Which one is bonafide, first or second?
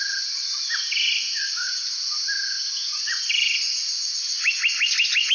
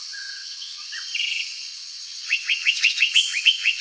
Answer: first